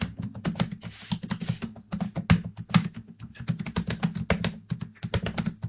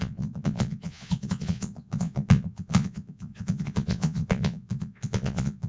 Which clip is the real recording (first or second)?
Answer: first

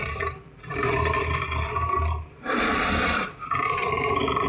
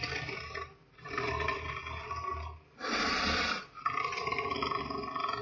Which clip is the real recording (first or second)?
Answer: second